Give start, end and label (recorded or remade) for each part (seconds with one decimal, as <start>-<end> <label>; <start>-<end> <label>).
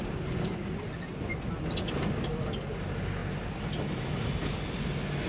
0.0-5.3 recorded